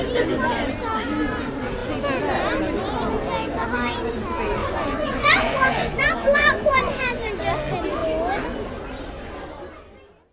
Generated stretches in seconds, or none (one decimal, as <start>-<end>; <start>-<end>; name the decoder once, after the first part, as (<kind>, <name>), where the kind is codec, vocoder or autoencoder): 4.6-7.3 (vocoder, Vocos)